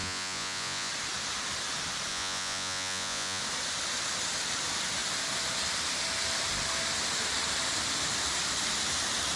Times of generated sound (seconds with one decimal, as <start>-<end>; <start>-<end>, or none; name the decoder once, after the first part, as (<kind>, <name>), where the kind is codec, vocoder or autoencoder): 0.0-0.9 (vocoder, Vocos); 2.1-3.4